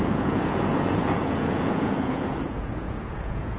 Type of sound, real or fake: fake